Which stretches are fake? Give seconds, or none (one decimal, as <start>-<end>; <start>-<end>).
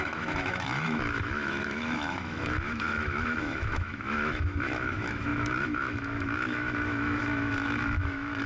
0.0-8.5